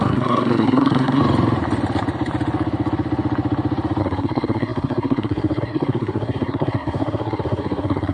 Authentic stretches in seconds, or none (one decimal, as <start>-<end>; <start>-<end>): 1.2-4.0